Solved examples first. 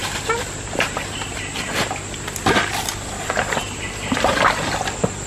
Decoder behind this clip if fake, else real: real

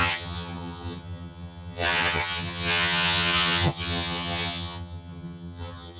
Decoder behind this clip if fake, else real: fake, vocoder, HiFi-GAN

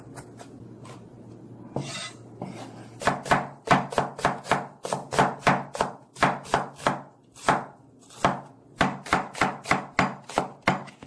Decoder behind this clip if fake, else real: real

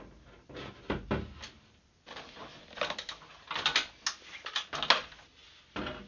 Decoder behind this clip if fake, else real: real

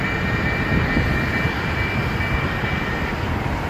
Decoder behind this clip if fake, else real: real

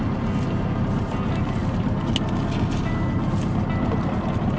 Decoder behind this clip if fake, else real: real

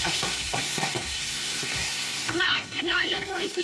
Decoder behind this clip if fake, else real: fake, codec, SNAC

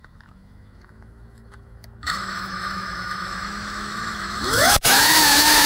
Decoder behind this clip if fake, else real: fake, autoencoder, DAC-VAE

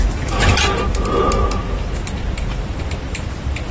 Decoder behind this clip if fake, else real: real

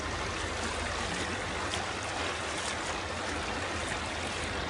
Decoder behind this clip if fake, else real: real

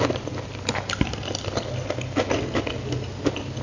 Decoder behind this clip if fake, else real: real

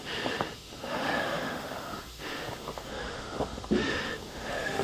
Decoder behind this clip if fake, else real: fake, autoencoder, DAC-VAE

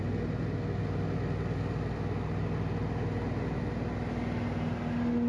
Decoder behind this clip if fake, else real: real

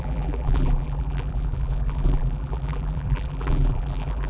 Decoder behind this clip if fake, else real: fake, vocoder, BigVGAN v2